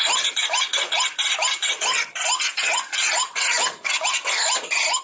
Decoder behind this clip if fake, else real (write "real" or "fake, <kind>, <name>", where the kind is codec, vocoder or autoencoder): real